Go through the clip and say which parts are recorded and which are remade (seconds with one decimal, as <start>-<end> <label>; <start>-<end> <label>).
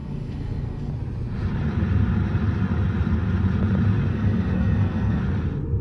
0.0-0.9 remade; 0.9-4.1 recorded; 4.1-5.2 remade; 5.2-5.8 recorded